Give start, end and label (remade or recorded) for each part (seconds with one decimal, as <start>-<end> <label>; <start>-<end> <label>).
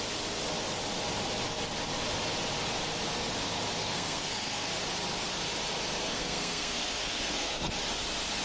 0.0-3.8 recorded; 3.8-4.7 remade; 4.7-6.1 recorded; 6.1-7.7 remade; 7.7-8.4 recorded